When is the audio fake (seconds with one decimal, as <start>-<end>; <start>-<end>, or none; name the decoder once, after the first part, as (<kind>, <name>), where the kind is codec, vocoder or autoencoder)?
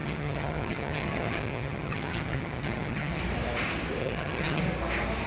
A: 0.0-3.2 (vocoder, HiFi-GAN); 4.0-4.6